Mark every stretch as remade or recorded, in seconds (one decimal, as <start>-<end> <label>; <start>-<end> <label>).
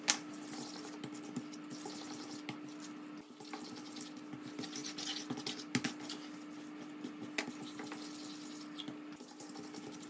0.0-10.1 recorded